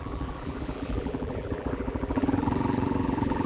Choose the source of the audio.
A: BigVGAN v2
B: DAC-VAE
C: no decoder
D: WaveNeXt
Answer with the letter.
A